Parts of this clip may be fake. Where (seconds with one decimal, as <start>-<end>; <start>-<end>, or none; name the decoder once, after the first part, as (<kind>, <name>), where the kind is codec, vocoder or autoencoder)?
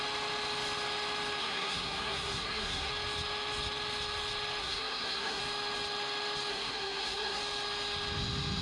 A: 1.4-2.9 (codec, SNAC); 4.6-5.4; 6.5-7.4